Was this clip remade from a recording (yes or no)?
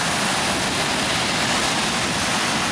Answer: no